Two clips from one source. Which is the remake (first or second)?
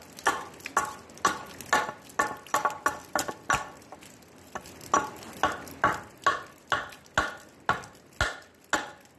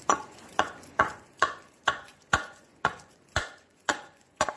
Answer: second